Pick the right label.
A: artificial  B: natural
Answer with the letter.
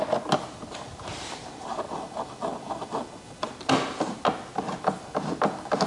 B